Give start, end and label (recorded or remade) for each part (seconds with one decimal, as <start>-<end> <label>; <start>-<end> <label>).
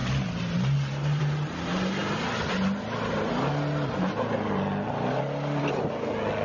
0.0-6.4 recorded